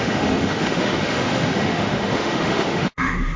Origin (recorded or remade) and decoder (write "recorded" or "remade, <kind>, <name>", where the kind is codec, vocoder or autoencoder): remade, autoencoder, DAC-VAE